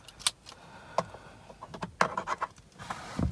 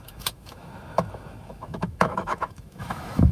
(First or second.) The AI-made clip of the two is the second